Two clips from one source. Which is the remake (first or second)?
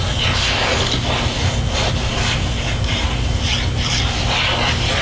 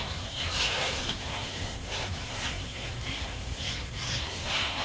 second